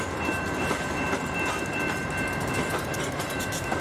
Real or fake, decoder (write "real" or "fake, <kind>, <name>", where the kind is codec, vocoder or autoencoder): fake, vocoder, BigVGAN v2